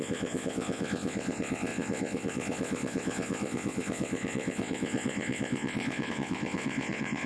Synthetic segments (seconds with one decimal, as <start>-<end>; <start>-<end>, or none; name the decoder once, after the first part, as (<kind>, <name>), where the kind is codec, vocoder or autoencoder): 0.0-7.3 (vocoder, WaveNeXt)